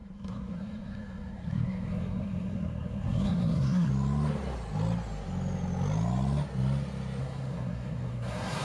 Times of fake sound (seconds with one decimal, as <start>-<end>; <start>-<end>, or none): 0.0-3.9; 7.2-8.6